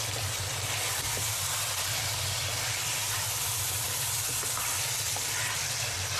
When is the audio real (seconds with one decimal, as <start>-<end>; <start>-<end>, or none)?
0.0-6.2